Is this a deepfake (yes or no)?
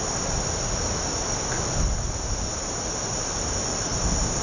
no